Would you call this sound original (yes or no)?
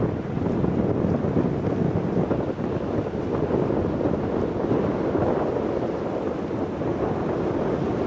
yes